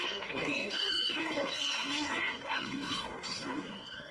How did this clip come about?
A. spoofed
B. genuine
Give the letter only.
A